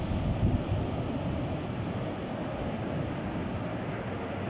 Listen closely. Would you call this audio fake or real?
real